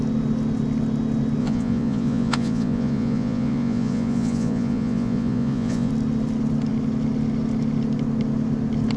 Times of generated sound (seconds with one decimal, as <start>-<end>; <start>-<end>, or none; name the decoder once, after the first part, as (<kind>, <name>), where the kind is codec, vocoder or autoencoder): 1.4-5.9 (vocoder, Vocos)